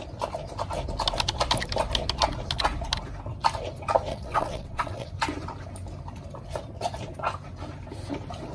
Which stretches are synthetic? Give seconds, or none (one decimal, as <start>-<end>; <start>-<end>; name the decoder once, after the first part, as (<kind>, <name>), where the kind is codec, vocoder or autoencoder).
4.1-5.1 (vocoder, WaveNeXt)